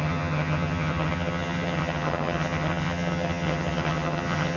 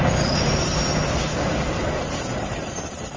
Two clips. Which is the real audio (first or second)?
second